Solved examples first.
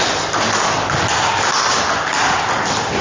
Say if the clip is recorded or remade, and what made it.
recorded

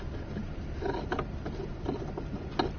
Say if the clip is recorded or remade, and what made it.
recorded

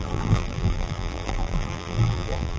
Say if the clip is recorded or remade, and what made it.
remade, vocoder, BigVGAN v2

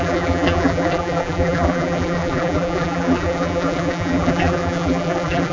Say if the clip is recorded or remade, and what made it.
remade, vocoder, BigVGAN v2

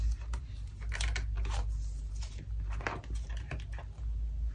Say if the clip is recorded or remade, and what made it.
recorded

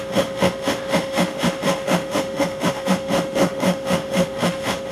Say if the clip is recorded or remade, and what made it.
remade, autoencoder, DAC-VAE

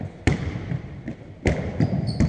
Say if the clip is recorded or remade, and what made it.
recorded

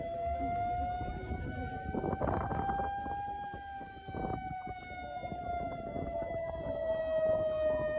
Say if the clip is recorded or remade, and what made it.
recorded